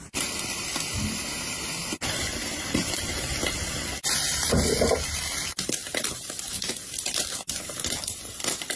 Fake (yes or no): yes